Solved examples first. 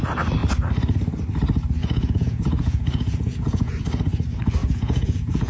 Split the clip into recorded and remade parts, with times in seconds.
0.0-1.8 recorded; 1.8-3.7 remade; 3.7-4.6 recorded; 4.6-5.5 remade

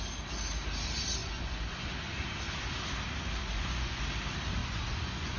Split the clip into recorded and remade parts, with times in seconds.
0.0-1.2 recorded; 1.2-1.9 remade; 1.9-3.4 recorded; 3.4-4.0 remade; 4.0-4.6 recorded; 4.6-5.4 remade

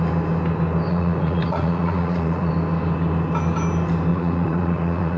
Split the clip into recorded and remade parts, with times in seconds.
0.0-0.9 recorded; 0.9-2.5 remade; 2.5-4.1 recorded; 4.1-5.2 remade

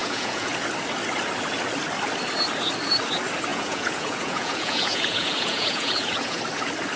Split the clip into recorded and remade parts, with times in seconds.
0.0-0.5 remade; 0.5-3.5 recorded; 3.5-6.4 remade; 6.4-7.0 recorded

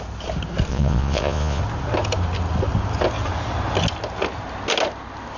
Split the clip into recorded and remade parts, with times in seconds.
0.0-0.7 recorded; 0.7-1.6 remade; 1.6-5.4 recorded

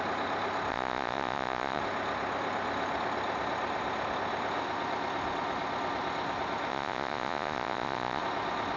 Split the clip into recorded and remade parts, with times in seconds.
0.0-0.7 recorded; 0.7-1.8 remade; 1.8-6.7 recorded; 6.7-8.2 remade; 8.2-8.8 recorded

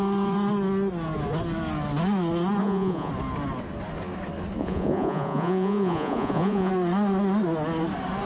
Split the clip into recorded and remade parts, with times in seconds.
0.0-2.6 recorded; 2.6-3.1 remade; 3.1-4.6 recorded; 4.6-6.7 remade; 6.7-8.3 recorded

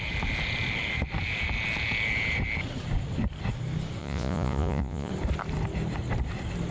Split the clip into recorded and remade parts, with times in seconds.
0.0-4.0 recorded; 4.0-5.1 remade; 5.1-6.7 recorded